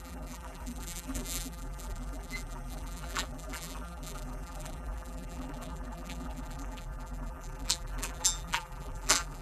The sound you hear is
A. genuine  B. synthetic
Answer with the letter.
B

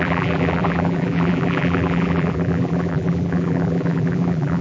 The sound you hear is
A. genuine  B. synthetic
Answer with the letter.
B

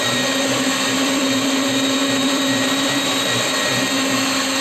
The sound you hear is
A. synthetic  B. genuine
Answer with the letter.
A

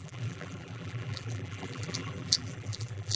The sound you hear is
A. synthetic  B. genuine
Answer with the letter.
A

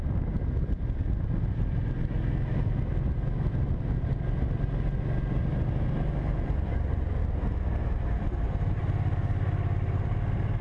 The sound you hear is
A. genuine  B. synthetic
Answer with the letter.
A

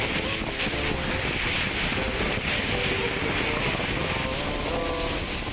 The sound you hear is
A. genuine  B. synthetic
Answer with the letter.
A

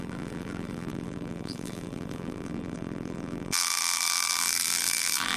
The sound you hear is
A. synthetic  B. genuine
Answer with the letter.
A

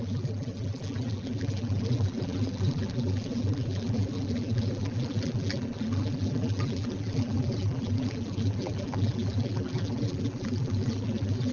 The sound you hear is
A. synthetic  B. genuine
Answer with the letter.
A